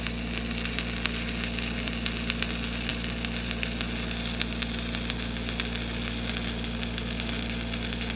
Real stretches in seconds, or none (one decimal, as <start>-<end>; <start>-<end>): 0.0-8.2